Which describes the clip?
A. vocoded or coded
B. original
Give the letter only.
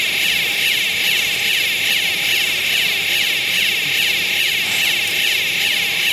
B